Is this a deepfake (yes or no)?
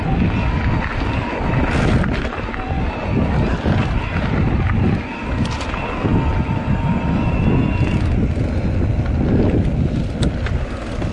no